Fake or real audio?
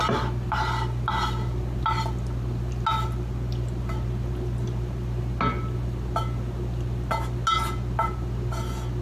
real